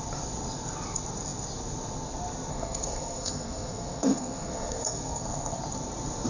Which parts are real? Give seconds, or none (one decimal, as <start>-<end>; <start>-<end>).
0.0-2.5; 5.6-6.3